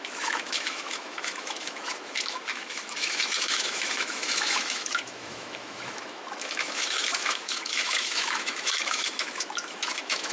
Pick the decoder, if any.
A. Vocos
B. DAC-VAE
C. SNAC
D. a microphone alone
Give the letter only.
B